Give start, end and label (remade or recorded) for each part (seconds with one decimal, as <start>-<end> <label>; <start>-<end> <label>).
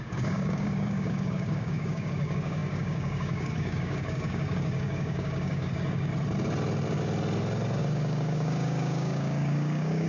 0.0-6.1 remade; 6.1-7.8 recorded; 7.8-10.1 remade